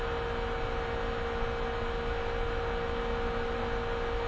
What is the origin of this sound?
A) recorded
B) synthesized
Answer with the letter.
A